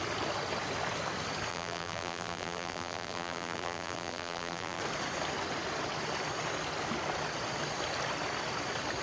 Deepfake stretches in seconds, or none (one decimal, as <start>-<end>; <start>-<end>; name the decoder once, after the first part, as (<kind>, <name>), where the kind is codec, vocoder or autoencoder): 1.5-4.8 (vocoder, BigVGAN v2)